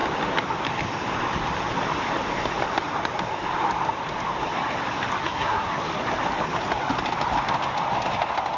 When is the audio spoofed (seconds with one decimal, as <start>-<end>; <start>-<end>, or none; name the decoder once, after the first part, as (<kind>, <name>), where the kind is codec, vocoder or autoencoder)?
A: 5.2-5.7 (codec, SNAC)